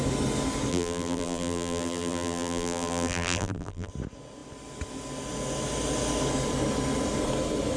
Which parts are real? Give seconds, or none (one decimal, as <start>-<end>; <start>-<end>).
0.0-0.7; 3.9-7.8